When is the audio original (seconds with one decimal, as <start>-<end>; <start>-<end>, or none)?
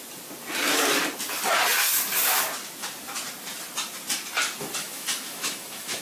0.0-4.8